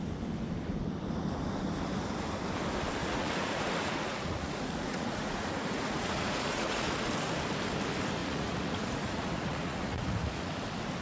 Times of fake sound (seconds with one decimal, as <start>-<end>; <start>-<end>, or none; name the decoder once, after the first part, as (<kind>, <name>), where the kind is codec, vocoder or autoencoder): 3.0-7.1 (vocoder, Vocos); 8.2-10.5

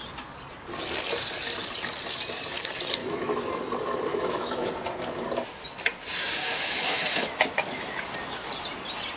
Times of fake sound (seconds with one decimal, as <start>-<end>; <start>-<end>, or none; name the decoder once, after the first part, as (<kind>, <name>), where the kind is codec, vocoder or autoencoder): 3.0-3.5 (autoencoder, DAC-VAE); 4.1-4.7; 6.4-8.0

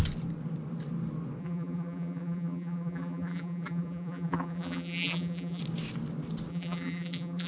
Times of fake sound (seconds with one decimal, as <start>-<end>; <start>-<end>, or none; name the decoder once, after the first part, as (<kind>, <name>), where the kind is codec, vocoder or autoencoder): 1.4-5.6 (vocoder, BigVGAN v2); 6.5-7.5

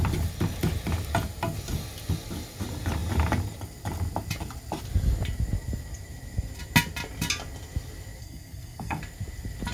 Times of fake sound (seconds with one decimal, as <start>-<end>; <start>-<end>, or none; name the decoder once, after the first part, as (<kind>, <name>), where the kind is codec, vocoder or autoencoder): 8.2-9.0 (codec, SNAC)